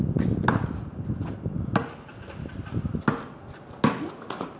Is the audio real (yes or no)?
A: yes